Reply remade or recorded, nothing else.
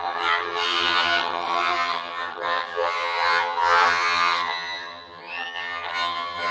remade